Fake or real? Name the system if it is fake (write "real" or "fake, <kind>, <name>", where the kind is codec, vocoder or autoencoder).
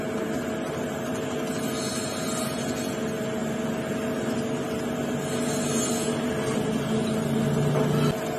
real